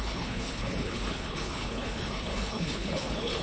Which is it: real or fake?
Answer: fake